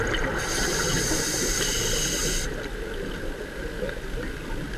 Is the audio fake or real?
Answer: real